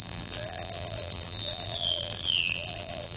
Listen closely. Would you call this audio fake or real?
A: fake